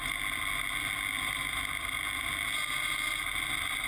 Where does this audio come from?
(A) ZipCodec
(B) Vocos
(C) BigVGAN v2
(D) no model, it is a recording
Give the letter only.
D